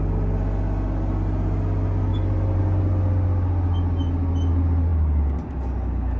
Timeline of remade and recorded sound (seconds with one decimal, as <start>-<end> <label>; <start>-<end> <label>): 0.0-2.1 recorded; 2.1-2.6 remade; 2.6-6.2 recorded